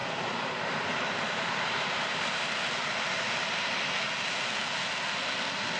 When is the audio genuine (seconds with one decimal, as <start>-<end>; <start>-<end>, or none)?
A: 2.6-5.8